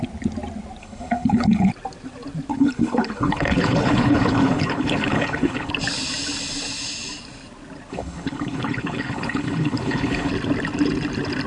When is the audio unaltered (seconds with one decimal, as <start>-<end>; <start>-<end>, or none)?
0.0-0.8; 1.7-2.5; 5.7-7.9; 10.3-11.5